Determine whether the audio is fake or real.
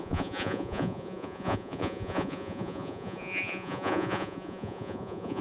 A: fake